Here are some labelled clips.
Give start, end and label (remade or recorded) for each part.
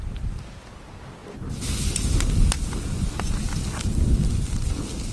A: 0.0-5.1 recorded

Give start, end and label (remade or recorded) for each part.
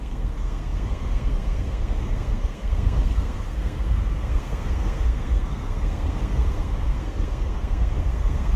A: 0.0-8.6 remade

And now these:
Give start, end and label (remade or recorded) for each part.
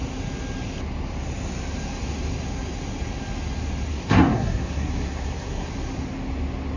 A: 0.0-3.9 recorded; 3.9-5.7 remade; 5.7-6.8 recorded